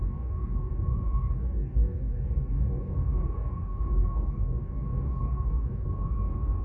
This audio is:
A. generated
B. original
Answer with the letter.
A